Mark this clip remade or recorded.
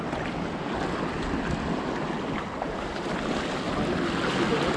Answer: recorded